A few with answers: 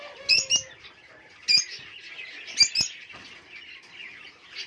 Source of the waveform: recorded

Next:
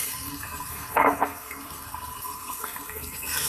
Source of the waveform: remade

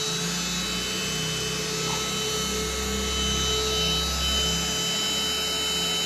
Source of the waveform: recorded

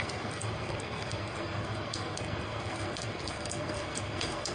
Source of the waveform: remade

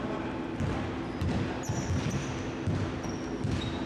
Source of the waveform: recorded